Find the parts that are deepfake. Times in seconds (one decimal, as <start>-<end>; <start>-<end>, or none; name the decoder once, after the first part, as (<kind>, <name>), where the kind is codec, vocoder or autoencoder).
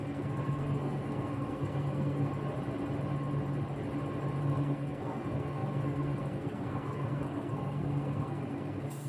0.0-2.3 (codec, SNAC); 4.4-9.1